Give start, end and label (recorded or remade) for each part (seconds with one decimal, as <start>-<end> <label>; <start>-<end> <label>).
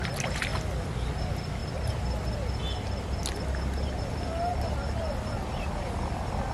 0.0-6.5 recorded